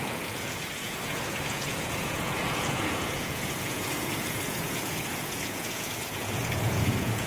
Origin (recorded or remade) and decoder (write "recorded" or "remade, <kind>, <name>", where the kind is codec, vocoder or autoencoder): remade, vocoder, Vocos